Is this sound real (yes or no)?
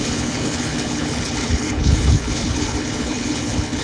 no